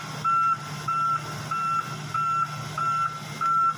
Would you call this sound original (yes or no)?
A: yes